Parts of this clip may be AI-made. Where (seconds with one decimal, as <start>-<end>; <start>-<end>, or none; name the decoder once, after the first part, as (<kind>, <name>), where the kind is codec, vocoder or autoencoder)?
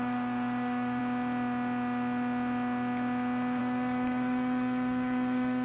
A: 0.0-1.0 (codec, DAC); 3.6-5.6